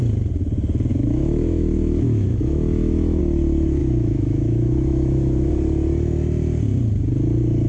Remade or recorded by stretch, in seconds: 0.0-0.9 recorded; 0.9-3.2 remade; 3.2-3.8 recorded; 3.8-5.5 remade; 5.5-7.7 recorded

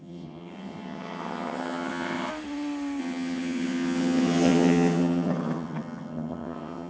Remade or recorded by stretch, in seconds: 0.0-2.3 remade; 2.3-3.0 recorded; 3.0-6.9 remade

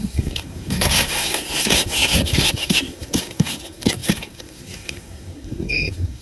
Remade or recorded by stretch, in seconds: 0.0-6.2 remade

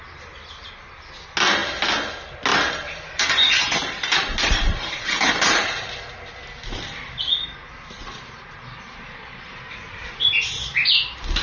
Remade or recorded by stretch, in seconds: 0.0-2.5 recorded; 2.5-5.9 remade; 5.9-8.0 recorded; 8.0-10.3 remade; 10.3-11.4 recorded

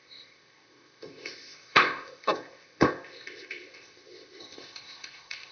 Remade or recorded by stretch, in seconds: 0.0-5.5 remade

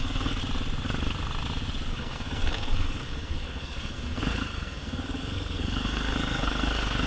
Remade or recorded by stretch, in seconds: 0.0-0.4 remade; 0.4-1.9 recorded; 1.9-7.1 remade